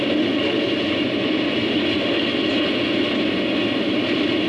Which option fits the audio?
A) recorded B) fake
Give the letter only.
A